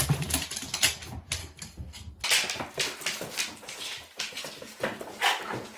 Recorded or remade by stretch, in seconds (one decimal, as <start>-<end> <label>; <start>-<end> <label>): 0.0-1.4 recorded; 1.4-2.1 remade; 2.1-5.8 recorded